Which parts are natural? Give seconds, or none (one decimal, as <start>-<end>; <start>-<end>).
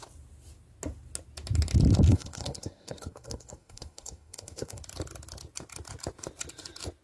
0.0-2.1; 4.8-7.0